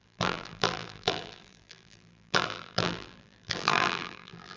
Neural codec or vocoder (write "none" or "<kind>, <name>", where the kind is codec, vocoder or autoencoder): vocoder, BigVGAN v2